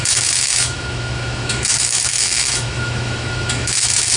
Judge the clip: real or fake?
fake